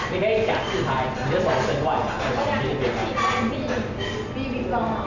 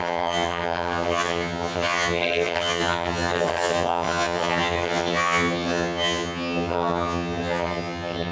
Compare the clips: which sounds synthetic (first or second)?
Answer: second